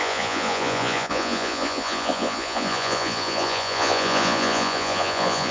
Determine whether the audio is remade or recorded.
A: remade